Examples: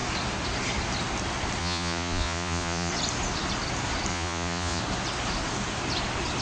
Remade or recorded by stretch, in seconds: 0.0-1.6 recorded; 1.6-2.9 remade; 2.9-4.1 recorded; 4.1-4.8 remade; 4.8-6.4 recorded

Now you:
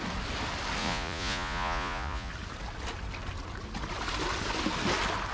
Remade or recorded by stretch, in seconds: 0.0-0.8 recorded; 0.8-2.3 remade; 2.3-5.3 recorded

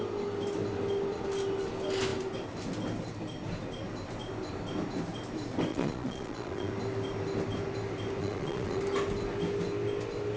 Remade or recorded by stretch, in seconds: 0.0-5.7 recorded; 5.7-6.7 remade; 6.7-8.2 recorded; 8.2-8.8 remade; 8.8-10.4 recorded

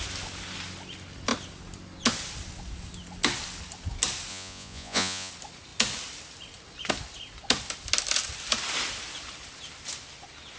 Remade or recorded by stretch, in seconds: 0.0-4.3 recorded; 4.3-5.3 remade; 5.3-10.6 recorded

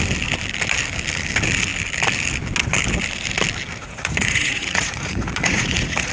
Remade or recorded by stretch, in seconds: 0.0-3.8 recorded; 3.8-6.1 remade

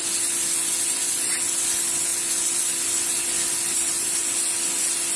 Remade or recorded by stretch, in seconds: 0.0-5.2 recorded

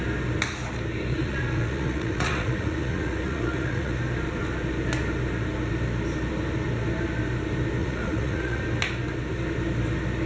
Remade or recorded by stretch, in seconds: 0.0-1.1 recorded; 1.1-4.0 remade; 4.0-7.8 recorded; 7.8-8.6 remade; 8.6-10.3 recorded